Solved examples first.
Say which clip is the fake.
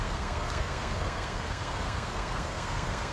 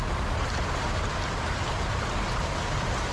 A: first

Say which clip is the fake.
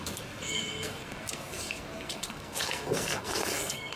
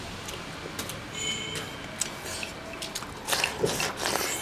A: first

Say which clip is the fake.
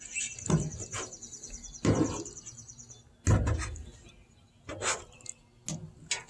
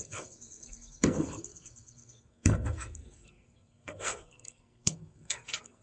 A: second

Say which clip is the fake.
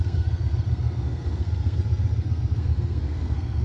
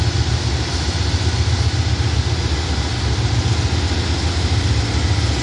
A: first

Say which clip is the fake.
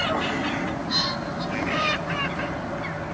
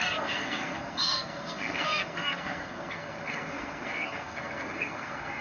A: second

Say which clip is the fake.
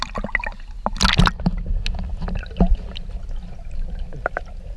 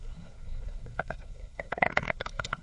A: second